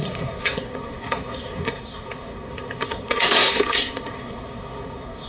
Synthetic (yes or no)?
yes